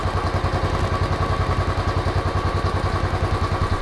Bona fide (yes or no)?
yes